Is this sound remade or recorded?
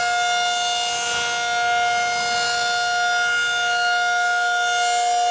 recorded